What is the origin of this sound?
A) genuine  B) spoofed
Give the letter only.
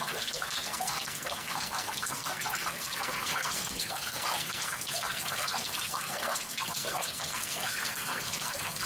B